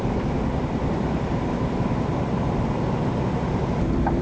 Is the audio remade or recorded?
remade